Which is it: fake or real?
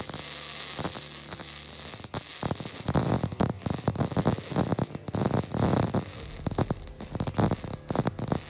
real